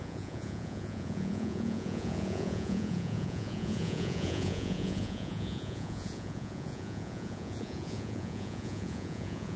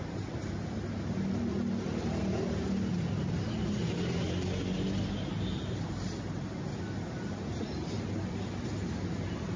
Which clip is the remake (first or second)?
first